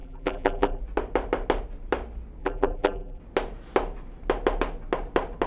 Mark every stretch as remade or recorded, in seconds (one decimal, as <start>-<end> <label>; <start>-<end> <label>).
0.0-0.8 remade; 0.8-2.4 recorded; 2.4-3.2 remade; 3.2-5.5 recorded